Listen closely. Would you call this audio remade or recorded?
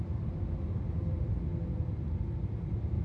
recorded